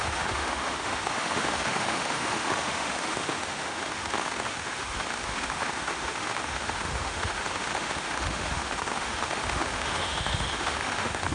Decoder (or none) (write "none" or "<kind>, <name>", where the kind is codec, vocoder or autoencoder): autoencoder, DAC-VAE